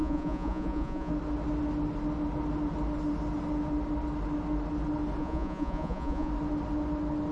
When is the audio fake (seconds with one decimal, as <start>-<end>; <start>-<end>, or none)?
0.0-1.1; 5.2-6.3